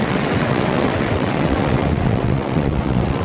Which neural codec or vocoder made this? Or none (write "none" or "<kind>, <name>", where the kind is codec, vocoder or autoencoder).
vocoder, WaveNeXt